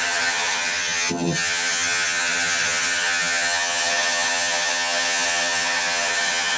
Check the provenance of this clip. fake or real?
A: fake